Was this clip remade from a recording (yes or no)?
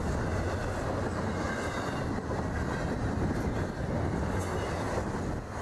no